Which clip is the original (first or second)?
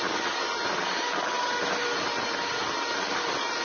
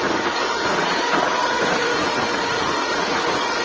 first